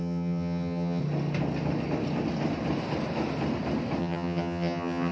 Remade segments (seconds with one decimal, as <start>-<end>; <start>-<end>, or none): 0.0-1.0; 4.0-5.1